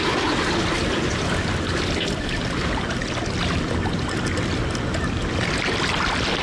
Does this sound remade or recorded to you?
recorded